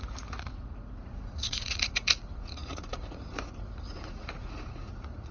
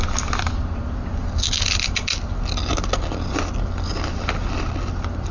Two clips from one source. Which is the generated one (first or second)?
first